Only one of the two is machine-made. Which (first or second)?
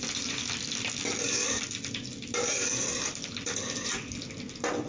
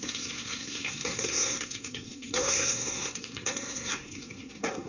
second